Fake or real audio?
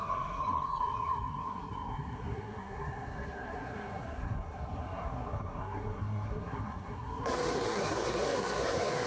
fake